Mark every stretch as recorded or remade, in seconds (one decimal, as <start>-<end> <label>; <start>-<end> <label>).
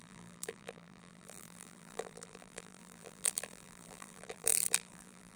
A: 0.0-5.4 remade